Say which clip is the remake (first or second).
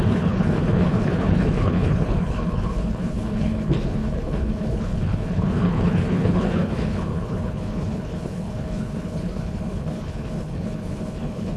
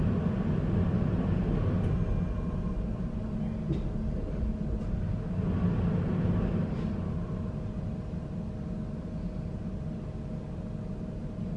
first